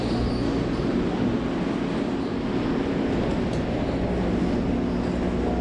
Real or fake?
real